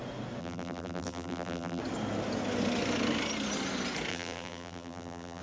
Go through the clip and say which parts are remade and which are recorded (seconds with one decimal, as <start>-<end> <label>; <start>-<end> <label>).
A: 0.0-0.4 recorded; 0.4-1.8 remade; 1.8-4.1 recorded; 4.1-5.4 remade